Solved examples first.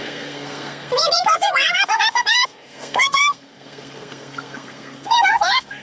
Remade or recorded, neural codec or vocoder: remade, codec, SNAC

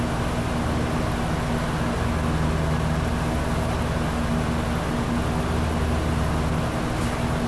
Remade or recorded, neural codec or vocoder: recorded